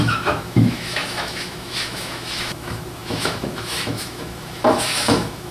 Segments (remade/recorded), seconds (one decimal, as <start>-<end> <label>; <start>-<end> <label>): 0.0-5.5 remade